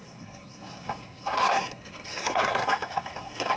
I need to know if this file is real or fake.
fake